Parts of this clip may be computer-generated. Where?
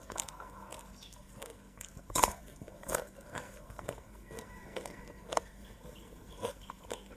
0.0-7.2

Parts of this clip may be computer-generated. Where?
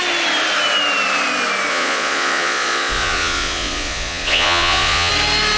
1.7-5.1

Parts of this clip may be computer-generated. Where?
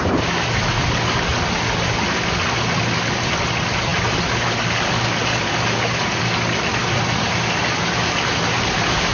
none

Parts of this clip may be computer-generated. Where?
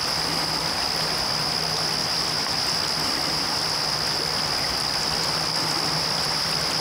none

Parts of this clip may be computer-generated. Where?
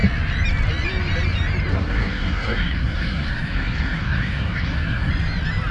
1.7-5.1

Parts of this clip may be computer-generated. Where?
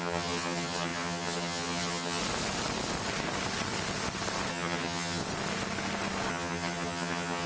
0.0-2.2; 4.5-5.2; 6.3-7.5